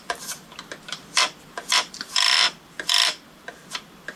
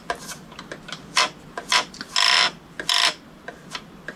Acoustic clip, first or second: second